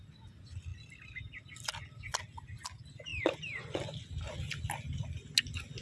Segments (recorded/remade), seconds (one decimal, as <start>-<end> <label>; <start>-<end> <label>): 0.0-5.8 recorded